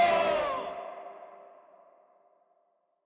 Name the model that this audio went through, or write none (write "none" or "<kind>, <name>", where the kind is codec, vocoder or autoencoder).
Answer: none